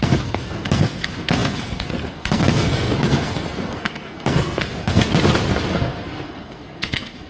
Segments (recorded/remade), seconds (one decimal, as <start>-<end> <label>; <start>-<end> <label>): 0.0-5.1 remade; 5.1-5.7 recorded; 5.7-7.3 remade